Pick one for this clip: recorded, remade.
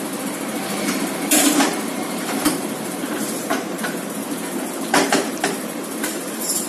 remade